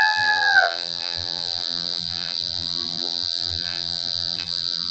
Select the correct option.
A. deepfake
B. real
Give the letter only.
A